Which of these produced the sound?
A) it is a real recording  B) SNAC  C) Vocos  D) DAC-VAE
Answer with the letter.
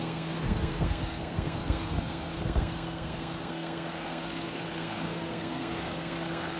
B